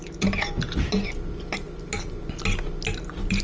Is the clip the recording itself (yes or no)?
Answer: yes